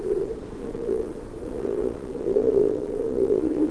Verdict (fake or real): fake